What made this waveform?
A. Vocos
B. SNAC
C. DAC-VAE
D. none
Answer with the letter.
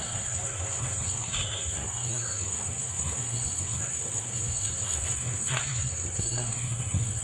B